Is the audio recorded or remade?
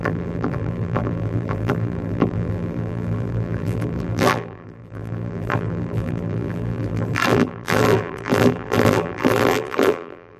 remade